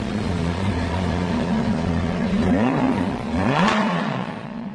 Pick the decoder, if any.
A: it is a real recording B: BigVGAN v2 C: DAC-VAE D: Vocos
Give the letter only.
D